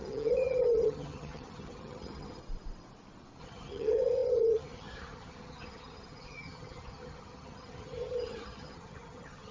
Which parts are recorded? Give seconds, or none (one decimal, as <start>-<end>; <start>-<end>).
2.4-3.4